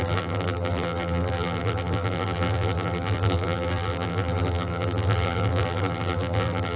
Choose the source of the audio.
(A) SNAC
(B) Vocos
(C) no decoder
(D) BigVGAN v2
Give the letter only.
D